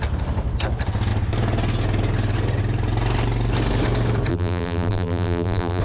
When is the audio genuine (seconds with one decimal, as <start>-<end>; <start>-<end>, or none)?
0.0-4.3